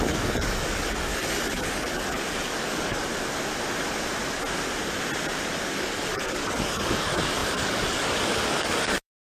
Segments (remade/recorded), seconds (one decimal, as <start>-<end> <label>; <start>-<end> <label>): 0.0-3.1 remade; 3.1-5.8 recorded; 5.8-9.3 remade